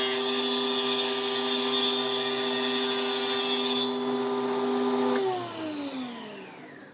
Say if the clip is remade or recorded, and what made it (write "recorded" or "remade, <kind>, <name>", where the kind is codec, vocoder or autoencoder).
recorded